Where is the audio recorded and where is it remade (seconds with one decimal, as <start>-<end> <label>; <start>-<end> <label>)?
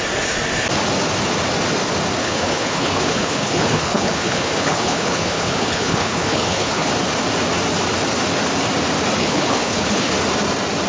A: 0.0-2.2 recorded; 2.2-6.9 remade; 6.9-9.2 recorded; 9.2-10.1 remade; 10.1-10.9 recorded